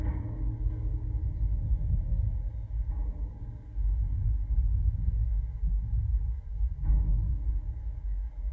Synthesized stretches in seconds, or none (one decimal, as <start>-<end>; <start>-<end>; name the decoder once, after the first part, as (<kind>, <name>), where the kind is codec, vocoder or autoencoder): 0.0-1.2 (codec, DAC); 3.3-8.5